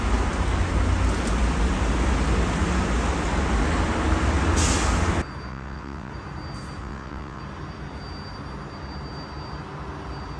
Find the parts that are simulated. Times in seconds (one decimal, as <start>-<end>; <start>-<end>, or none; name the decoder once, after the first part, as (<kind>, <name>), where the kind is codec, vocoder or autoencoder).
5.5-6.1 (vocoder, WaveNeXt); 6.8-7.4